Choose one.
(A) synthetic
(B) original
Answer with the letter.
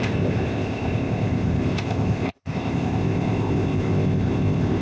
A